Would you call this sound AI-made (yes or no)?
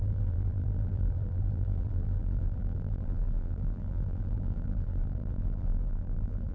yes